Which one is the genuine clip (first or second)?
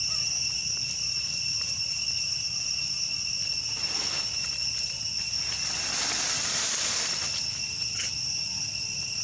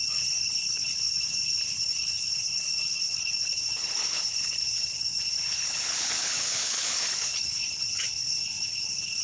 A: first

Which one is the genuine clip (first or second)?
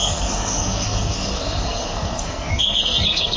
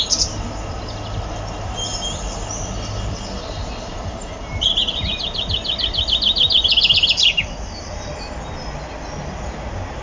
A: second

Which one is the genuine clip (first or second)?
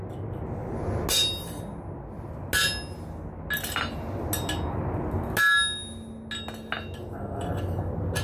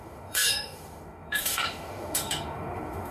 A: first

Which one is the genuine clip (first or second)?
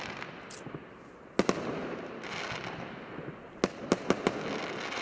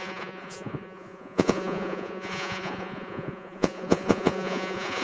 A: first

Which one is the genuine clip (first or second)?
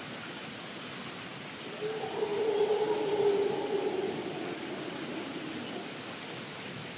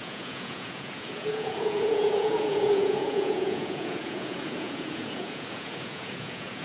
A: first